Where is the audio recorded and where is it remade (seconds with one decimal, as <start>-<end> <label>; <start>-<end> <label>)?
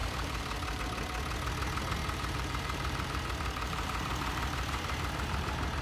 0.0-0.8 remade; 0.8-2.0 recorded; 2.0-5.8 remade